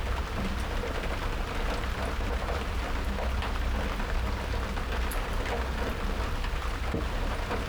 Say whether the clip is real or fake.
real